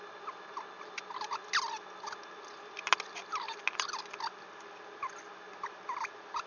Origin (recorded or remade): recorded